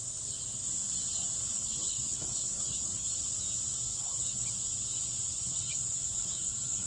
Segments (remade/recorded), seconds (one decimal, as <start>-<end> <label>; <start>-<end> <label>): 0.0-1.5 recorded; 1.5-3.1 remade; 3.1-3.9 recorded; 3.9-4.5 remade; 4.5-5.3 recorded; 5.3-6.9 remade